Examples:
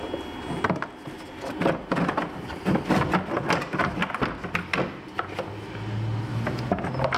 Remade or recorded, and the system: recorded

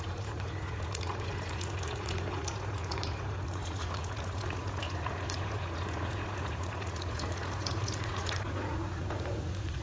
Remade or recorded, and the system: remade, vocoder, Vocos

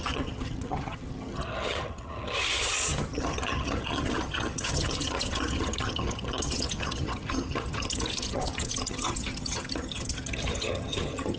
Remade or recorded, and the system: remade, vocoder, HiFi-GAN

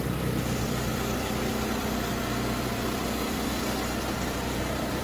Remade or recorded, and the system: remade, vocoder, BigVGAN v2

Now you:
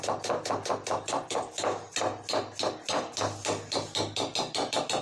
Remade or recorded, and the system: recorded